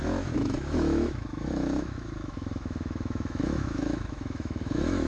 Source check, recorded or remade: remade